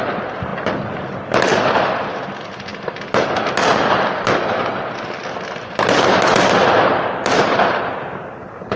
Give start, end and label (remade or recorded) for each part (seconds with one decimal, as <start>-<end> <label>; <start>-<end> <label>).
0.0-8.8 recorded